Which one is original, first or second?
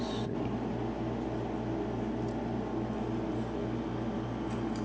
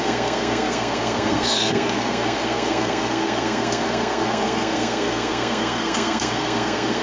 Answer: first